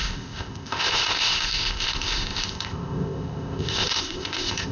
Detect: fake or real fake